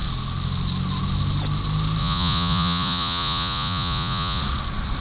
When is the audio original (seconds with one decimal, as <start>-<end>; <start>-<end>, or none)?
0.0-2.0; 4.4-5.0